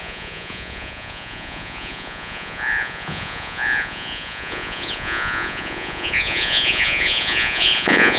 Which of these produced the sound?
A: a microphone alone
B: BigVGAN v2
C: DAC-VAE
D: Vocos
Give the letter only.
D